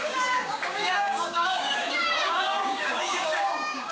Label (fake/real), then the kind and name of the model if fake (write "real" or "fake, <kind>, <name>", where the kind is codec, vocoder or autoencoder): fake, codec, DAC